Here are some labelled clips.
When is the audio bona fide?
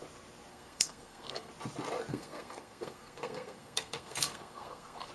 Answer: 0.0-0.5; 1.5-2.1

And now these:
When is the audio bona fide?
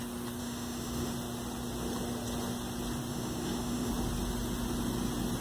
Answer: 0.0-0.4; 1.1-3.1; 3.9-5.4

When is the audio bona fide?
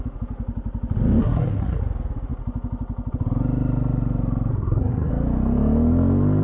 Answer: 0.0-1.2; 1.8-4.5; 5.1-6.4